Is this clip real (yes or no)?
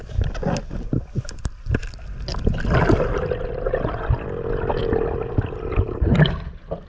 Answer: yes